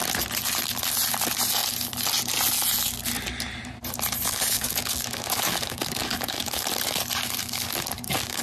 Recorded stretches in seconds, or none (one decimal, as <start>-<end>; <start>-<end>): 0.0-4.3; 6.7-7.4